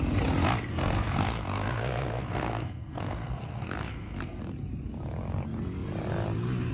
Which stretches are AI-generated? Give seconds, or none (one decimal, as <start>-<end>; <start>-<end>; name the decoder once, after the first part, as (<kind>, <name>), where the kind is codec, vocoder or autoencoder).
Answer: 0.7-4.4 (codec, SNAC)